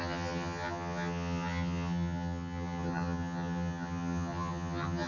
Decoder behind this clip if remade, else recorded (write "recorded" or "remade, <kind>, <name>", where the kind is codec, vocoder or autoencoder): remade, vocoder, HiFi-GAN